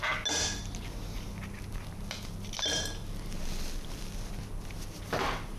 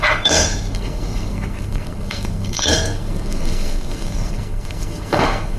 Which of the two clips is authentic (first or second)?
first